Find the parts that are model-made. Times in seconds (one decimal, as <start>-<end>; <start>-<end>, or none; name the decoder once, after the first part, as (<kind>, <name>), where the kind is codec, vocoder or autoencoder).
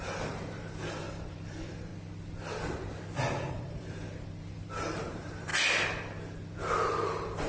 0.0-1.9 (vocoder, BigVGAN v2); 3.5-5.5; 6.9-7.5